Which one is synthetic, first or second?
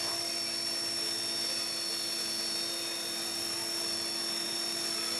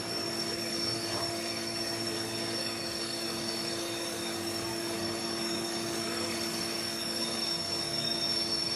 second